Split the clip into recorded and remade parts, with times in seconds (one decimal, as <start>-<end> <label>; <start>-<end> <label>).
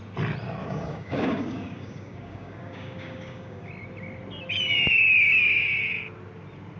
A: 0.0-0.6 recorded; 0.6-3.7 remade; 3.7-6.8 recorded